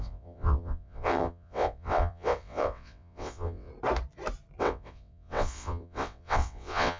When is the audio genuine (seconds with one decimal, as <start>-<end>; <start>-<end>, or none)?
3.7-4.6